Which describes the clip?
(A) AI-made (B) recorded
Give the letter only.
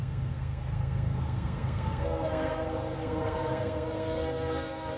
A